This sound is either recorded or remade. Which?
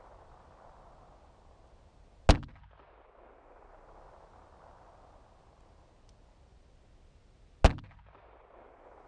recorded